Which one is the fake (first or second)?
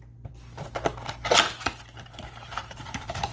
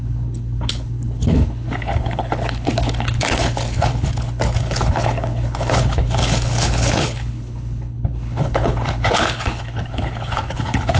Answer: second